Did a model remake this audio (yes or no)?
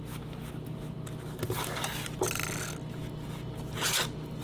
no